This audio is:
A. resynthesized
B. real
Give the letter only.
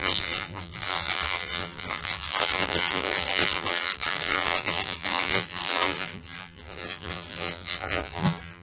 A